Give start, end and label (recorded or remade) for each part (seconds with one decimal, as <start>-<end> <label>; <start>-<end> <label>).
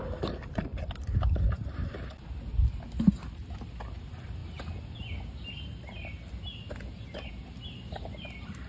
0.0-8.7 recorded